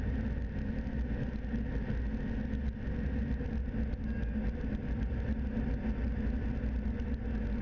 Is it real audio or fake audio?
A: real